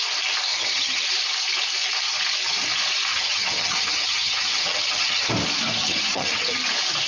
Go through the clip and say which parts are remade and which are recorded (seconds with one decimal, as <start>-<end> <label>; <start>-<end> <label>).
0.0-0.5 recorded; 0.5-1.0 remade; 1.0-3.1 recorded; 3.1-5.3 remade; 5.3-5.8 recorded; 5.8-6.6 remade; 6.6-7.1 recorded